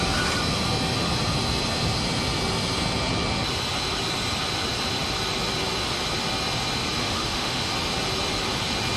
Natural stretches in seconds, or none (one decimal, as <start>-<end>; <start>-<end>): 0.0-7.0; 7.7-9.0